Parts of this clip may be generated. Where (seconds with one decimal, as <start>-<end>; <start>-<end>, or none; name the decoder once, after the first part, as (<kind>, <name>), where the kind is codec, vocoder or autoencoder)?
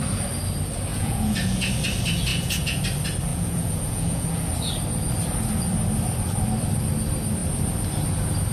0.9-1.7 (vocoder, Vocos); 2.3-2.8; 3.3-4.4